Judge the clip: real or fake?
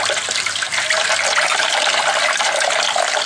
real